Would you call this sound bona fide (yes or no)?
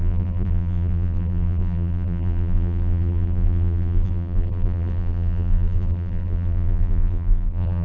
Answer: no